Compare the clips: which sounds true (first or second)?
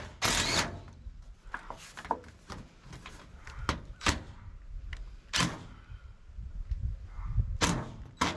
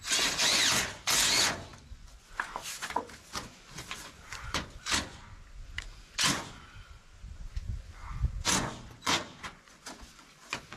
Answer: first